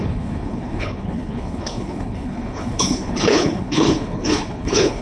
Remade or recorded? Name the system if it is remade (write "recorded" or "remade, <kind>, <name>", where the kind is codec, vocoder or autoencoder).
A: remade, codec, HILCodec